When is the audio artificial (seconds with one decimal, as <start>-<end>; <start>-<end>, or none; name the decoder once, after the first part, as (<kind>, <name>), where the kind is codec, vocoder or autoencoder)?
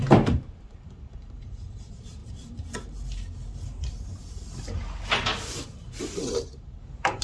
0.0-2.2 (vocoder, BigVGAN v2); 5.5-7.2